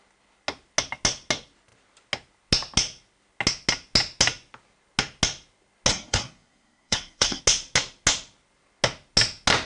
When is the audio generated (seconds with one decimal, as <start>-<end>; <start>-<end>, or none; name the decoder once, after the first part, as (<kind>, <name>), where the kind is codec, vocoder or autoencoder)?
5.9-7.4 (codec, SNAC)